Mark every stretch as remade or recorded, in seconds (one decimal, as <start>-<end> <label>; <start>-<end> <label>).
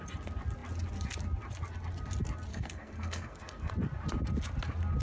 0.0-2.5 recorded; 2.5-3.7 remade; 3.7-5.0 recorded